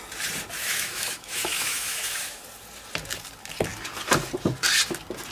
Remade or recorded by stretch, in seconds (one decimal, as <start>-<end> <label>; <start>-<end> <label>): 0.0-0.6 recorded; 0.6-2.4 remade; 2.4-5.3 recorded